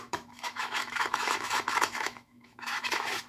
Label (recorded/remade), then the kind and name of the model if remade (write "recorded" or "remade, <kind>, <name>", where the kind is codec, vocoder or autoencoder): remade, autoencoder, DAC-VAE